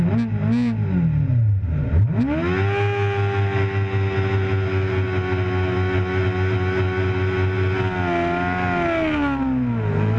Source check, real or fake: real